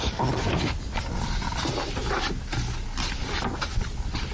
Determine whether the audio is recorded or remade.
recorded